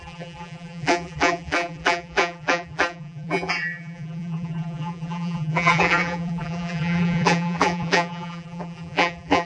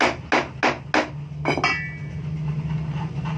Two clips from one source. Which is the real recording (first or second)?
second